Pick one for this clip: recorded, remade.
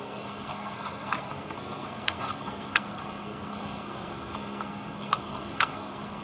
remade